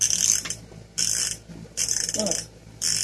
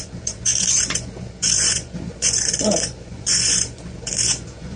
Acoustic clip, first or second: first